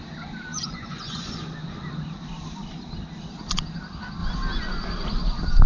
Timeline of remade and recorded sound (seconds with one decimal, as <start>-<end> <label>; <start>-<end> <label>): 0.0-0.5 recorded; 0.5-1.3 remade; 1.3-5.7 recorded